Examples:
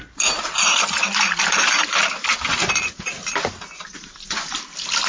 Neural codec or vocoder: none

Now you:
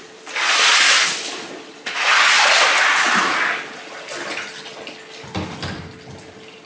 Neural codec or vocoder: none